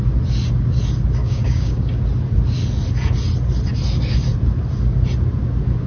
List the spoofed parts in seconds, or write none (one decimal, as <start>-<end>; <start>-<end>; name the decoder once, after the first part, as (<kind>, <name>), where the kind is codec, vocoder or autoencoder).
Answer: 1.2-2.0 (codec, DAC)